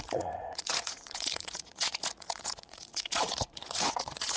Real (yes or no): no